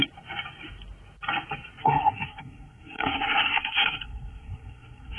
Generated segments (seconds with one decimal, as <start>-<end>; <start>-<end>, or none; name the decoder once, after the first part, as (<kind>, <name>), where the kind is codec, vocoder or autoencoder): 1.8-5.2 (codec, SNAC)